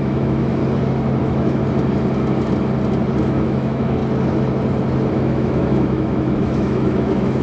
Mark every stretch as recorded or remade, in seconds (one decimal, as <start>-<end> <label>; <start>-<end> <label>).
0.0-0.6 remade; 0.6-1.2 recorded; 1.2-1.6 remade; 1.6-3.2 recorded; 3.2-4.0 remade; 4.0-5.1 recorded; 5.1-7.4 remade

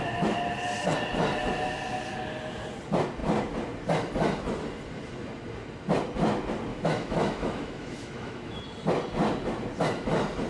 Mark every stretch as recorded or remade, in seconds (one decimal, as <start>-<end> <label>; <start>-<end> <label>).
0.0-6.7 recorded; 6.7-8.6 remade; 8.6-10.5 recorded